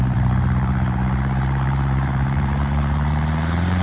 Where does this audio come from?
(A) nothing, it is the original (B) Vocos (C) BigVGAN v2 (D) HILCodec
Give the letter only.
C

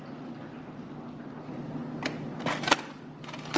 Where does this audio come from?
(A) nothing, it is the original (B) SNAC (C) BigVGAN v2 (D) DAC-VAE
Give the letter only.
A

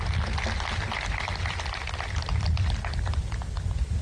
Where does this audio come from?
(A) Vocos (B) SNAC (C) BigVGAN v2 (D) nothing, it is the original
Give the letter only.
D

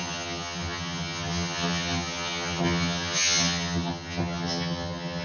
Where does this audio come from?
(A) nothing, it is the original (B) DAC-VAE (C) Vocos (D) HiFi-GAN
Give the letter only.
D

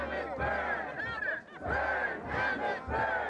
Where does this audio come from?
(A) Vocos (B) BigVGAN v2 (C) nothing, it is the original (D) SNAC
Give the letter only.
C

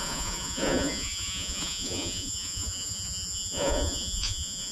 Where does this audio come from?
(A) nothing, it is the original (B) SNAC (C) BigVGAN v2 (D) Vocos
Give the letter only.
D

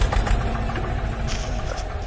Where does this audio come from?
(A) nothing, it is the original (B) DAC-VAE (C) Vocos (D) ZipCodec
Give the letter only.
A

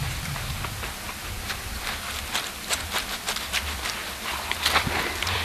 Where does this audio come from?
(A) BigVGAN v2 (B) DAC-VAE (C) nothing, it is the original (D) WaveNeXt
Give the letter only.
C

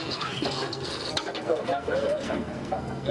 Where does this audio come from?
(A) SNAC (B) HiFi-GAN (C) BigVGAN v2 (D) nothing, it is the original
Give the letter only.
A